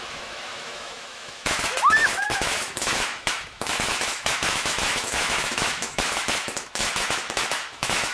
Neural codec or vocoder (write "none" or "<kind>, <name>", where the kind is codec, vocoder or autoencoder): autoencoder, DAC-VAE